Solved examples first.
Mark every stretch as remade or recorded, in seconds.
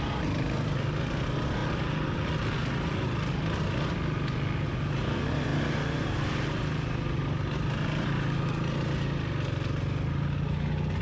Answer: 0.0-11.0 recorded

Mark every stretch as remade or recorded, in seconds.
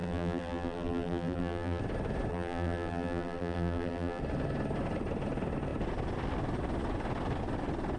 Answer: 0.0-1.8 remade; 1.8-2.3 recorded; 2.3-4.2 remade; 4.2-8.0 recorded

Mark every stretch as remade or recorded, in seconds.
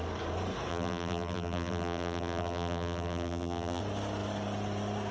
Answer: 0.0-0.7 recorded; 0.7-3.8 remade; 3.8-5.1 recorded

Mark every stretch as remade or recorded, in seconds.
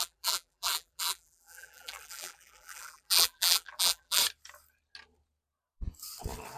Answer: 0.0-4.2 remade; 4.2-6.6 recorded